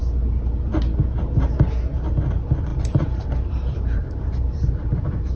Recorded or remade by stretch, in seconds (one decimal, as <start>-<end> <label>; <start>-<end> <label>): 0.0-2.7 recorded; 2.7-4.7 remade; 4.7-5.4 recorded